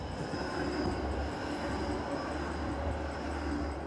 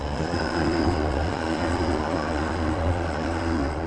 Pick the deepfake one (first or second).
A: second